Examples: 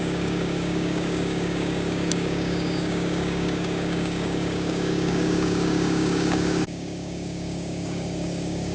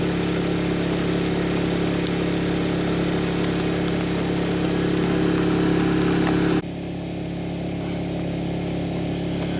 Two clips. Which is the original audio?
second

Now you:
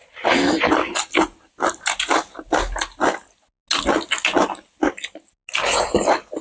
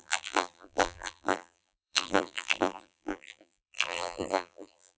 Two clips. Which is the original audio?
first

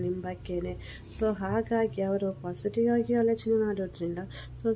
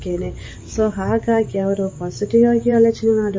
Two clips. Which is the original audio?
first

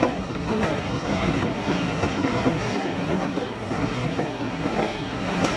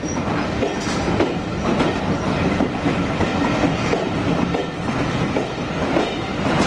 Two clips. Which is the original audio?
second